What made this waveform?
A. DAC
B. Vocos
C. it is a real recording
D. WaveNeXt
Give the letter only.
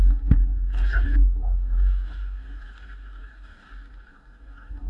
A